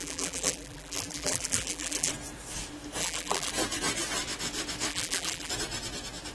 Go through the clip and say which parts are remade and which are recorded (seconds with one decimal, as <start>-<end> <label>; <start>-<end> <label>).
0.0-2.1 remade; 2.1-3.0 recorded; 3.0-3.5 remade; 3.5-4.9 recorded; 4.9-5.5 remade; 5.5-6.3 recorded